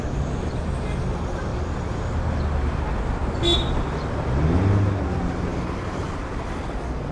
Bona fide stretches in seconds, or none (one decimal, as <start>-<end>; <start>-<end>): 0.0-7.1